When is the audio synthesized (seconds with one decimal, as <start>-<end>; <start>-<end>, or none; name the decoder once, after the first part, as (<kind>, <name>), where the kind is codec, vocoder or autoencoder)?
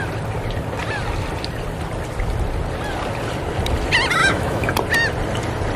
4.2-4.7 (autoencoder, DAC-VAE)